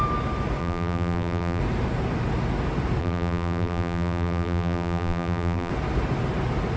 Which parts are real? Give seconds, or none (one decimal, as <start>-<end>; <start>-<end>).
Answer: 0.0-0.6; 1.6-3.0; 5.7-6.8